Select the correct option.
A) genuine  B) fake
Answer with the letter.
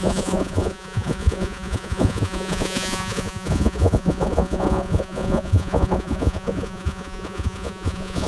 B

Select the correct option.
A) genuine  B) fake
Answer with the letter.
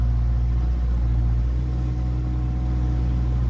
A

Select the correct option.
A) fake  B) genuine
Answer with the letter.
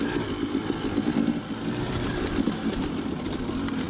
B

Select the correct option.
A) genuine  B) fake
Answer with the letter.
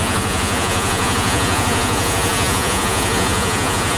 B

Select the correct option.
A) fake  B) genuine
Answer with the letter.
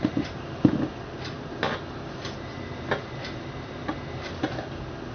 B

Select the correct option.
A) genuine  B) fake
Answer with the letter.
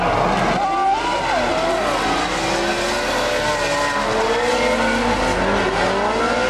A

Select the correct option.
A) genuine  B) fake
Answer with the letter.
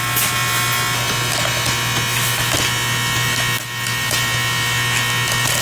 A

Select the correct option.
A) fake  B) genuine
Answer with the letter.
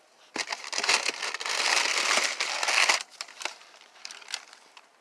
B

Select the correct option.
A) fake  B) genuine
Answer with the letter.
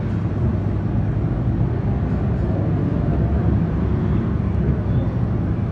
B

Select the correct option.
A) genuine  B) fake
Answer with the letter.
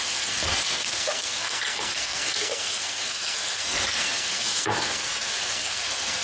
B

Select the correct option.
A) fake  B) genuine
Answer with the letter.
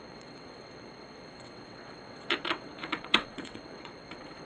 A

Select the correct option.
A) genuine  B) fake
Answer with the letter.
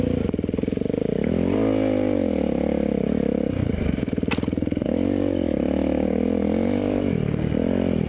A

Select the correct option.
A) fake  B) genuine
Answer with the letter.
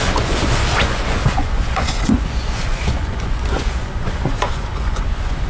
A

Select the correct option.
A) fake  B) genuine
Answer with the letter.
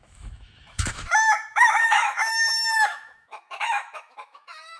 A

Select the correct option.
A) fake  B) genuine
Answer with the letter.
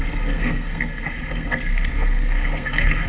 A